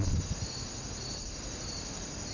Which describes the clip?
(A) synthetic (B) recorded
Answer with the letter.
B